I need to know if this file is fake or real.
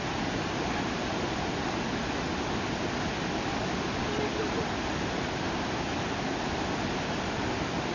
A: real